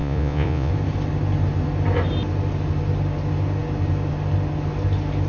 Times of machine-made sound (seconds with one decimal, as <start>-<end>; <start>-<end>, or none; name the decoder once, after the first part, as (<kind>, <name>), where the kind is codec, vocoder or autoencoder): 0.0-0.7 (vocoder, Vocos)